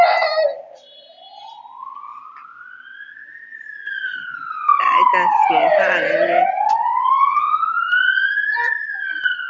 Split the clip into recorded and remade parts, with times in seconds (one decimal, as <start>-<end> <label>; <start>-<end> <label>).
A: 0.0-9.5 recorded